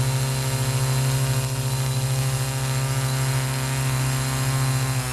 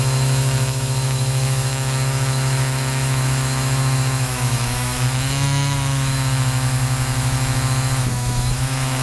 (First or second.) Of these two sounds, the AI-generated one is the second